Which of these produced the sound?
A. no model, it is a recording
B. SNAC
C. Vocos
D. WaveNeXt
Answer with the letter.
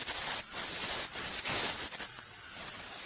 A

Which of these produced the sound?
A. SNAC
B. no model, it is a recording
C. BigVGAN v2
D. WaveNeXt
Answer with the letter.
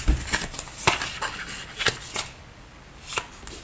B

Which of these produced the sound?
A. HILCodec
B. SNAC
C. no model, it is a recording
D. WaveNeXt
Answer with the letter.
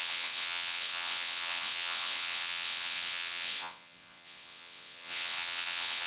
D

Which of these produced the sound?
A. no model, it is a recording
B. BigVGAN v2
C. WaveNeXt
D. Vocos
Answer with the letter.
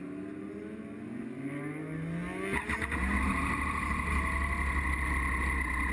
A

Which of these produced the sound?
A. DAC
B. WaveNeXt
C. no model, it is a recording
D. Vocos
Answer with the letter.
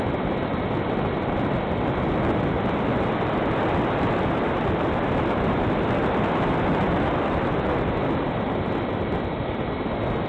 C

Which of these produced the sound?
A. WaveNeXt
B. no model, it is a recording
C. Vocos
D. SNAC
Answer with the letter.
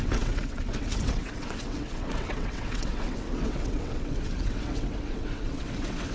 A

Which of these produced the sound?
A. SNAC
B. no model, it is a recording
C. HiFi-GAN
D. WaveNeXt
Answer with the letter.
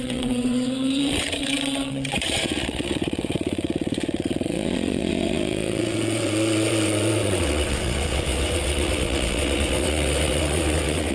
D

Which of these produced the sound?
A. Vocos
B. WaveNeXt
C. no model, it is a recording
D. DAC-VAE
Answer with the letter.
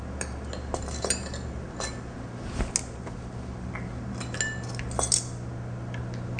C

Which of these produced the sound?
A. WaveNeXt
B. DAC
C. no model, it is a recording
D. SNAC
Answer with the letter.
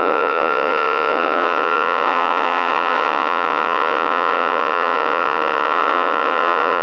A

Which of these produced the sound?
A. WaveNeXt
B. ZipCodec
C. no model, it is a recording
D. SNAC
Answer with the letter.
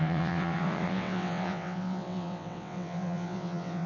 A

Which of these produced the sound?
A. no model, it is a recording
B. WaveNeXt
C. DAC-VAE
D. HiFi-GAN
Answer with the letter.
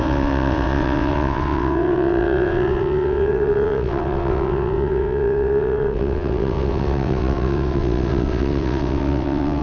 B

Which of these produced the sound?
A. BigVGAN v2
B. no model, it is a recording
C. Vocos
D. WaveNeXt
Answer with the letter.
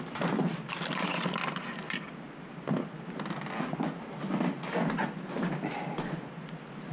B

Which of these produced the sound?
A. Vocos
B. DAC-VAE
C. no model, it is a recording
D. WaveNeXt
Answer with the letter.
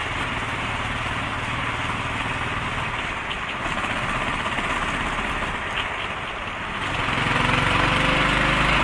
C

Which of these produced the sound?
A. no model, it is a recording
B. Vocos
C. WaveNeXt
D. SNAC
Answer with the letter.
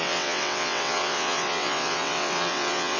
C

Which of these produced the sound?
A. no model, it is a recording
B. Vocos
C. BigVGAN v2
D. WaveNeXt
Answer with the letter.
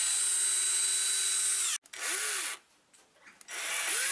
A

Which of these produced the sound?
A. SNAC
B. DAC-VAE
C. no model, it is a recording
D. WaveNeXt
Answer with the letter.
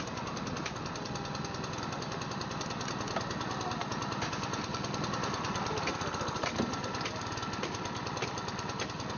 C